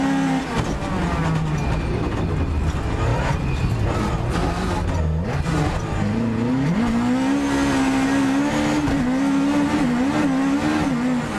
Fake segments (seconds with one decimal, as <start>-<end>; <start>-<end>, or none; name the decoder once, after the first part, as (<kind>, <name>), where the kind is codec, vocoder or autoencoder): 3.1-4.0 (vocoder, BigVGAN v2)